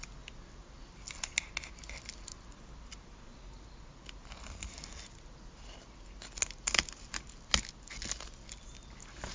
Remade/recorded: recorded